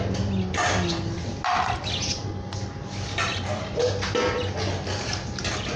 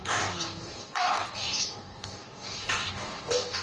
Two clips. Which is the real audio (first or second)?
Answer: first